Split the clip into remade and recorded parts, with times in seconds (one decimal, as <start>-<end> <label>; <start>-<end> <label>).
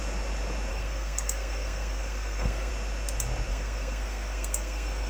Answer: 0.0-0.7 recorded; 0.7-2.7 remade; 2.7-3.5 recorded; 3.5-5.1 remade